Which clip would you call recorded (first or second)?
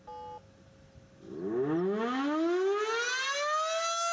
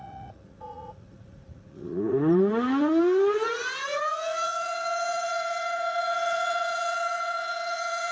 first